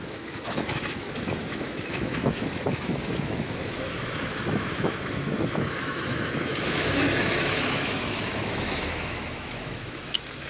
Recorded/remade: remade